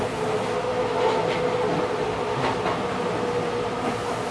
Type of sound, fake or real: real